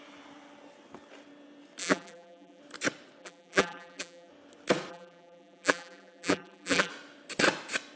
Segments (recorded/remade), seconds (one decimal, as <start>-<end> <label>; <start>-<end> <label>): 0.0-1.8 recorded; 1.8-2.6 remade; 2.6-3.2 recorded; 3.2-4.3 remade; 4.3-4.9 recorded; 4.9-6.9 remade; 6.9-8.0 recorded